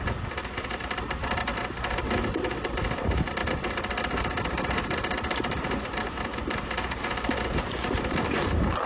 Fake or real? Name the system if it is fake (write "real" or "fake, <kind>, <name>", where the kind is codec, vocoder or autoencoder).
fake, vocoder, BigVGAN v2